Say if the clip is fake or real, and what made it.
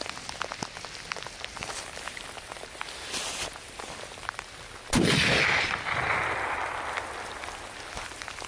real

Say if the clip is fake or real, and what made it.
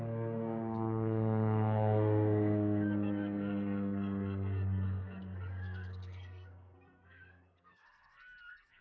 fake, codec, SNAC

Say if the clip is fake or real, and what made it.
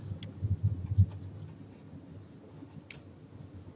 real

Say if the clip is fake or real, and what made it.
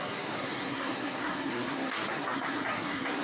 fake, codec, SNAC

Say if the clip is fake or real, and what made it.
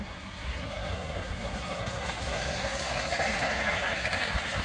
fake, codec, SNAC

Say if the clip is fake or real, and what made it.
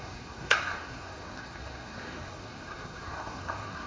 fake, codec, SNAC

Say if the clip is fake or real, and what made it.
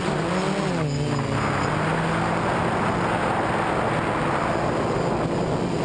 real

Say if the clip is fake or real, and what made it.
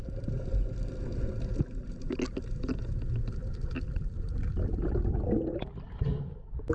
real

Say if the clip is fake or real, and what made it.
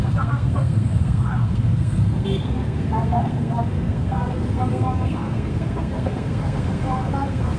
fake, codec, SNAC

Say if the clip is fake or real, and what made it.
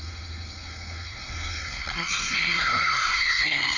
fake, codec, SNAC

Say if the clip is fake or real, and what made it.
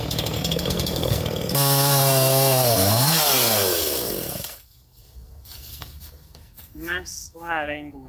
fake, codec, SNAC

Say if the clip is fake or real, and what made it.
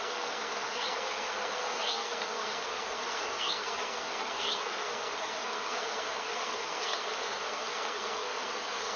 fake, codec, SNAC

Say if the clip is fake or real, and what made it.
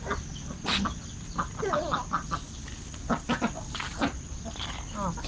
real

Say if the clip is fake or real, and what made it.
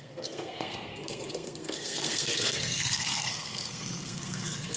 fake, codec, SNAC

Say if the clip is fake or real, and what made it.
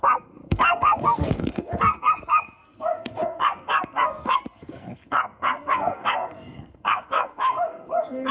fake, codec, SNAC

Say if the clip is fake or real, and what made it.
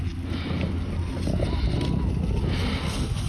real